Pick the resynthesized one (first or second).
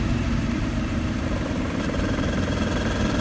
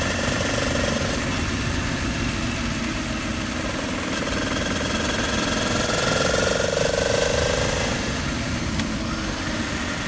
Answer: first